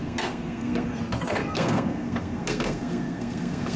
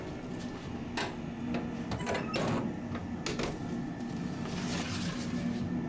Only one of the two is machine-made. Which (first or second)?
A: first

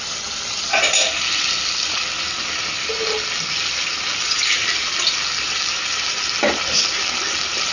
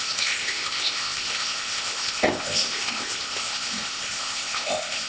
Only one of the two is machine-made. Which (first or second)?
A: second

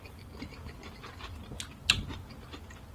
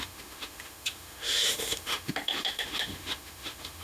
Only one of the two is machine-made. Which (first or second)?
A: second